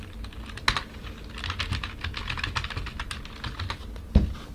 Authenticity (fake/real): real